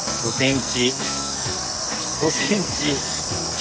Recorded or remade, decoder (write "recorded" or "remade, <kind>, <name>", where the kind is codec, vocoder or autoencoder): remade, codec, SNAC